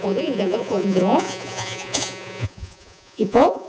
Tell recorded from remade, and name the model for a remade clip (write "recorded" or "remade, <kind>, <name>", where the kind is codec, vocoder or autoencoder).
remade, vocoder, Vocos